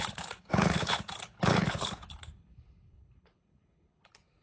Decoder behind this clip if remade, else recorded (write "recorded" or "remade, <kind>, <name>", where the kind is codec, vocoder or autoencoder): remade, codec, HILCodec